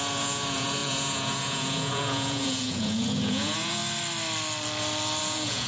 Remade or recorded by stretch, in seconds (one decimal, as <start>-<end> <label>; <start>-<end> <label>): 0.0-3.8 remade; 3.8-5.2 recorded; 5.2-5.7 remade